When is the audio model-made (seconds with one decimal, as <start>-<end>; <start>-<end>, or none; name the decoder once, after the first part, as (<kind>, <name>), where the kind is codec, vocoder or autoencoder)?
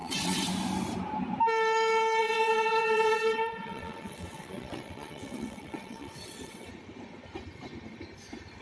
0.0-0.5 (vocoder, WaveNeXt); 2.2-6.7